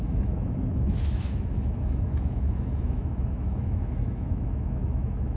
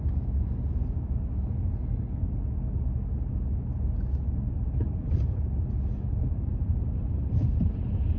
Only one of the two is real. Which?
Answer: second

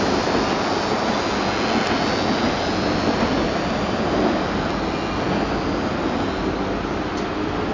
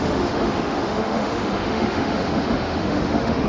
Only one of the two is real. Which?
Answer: first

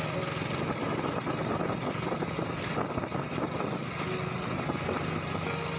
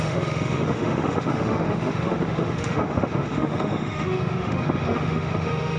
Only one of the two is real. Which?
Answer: first